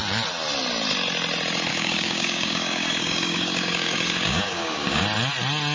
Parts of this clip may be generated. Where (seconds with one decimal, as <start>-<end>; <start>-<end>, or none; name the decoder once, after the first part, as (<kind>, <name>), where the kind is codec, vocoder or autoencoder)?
1.7-5.0 (codec, DAC)

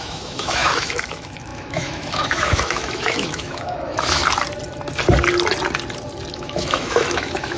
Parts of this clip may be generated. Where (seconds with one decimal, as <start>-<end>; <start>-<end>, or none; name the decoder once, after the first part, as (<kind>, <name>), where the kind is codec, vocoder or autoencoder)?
0.0-4.2 (autoencoder, DAC-VAE); 6.3-7.6